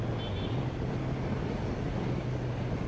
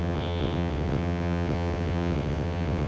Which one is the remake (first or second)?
second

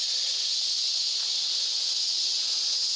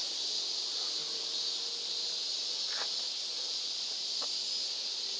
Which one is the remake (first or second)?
first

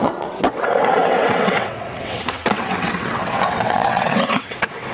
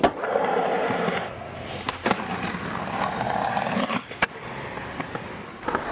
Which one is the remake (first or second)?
first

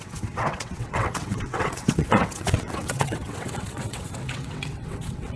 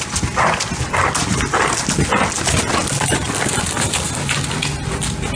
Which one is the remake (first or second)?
first